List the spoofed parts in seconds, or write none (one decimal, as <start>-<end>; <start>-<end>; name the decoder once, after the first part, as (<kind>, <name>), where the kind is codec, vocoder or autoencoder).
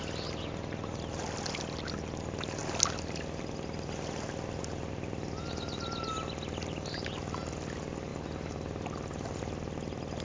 none